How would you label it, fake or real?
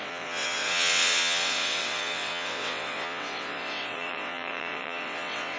fake